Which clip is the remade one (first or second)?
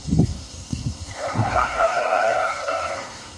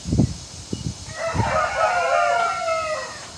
first